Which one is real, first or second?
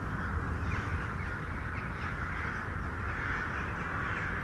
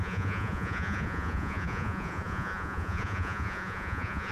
first